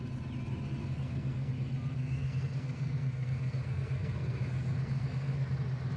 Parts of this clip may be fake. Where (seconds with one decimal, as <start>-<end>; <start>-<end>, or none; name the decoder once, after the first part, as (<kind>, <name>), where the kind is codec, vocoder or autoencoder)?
0.8-1.5 (codec, SNAC); 1.9-5.5